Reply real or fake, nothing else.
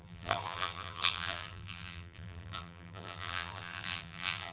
fake